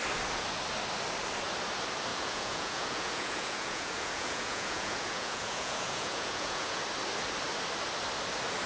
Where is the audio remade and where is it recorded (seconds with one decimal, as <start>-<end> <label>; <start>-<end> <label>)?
0.0-2.1 recorded; 2.1-6.8 remade; 6.8-8.7 recorded